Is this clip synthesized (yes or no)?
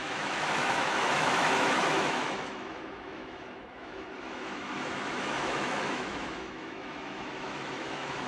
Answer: yes